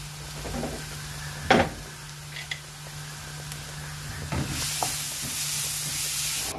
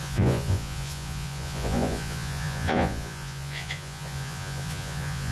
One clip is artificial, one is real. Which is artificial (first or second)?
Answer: second